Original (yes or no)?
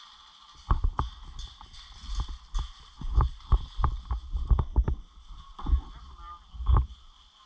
yes